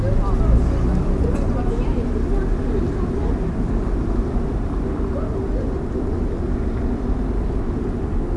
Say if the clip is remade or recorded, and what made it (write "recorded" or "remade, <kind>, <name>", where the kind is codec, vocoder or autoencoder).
recorded